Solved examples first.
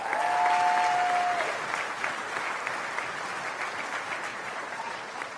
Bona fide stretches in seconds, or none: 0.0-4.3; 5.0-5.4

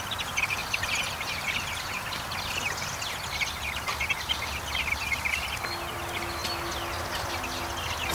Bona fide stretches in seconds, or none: 0.0-8.1

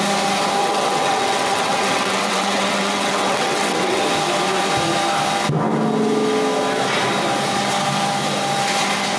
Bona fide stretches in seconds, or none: 0.0-0.6; 4.0-9.2

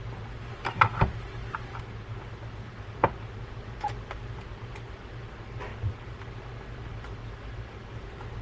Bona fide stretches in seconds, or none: 0.0-8.4